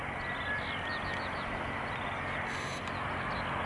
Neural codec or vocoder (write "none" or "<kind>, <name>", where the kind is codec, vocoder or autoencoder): none